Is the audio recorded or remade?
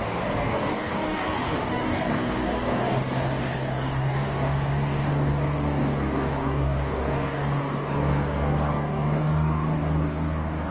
remade